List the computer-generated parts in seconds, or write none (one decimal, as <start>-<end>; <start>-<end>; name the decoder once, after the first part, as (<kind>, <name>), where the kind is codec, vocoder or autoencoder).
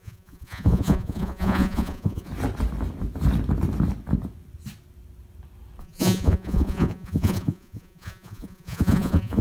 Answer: 0.0-2.3 (vocoder, Vocos); 5.8-9.4